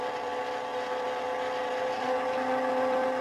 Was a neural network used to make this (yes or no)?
no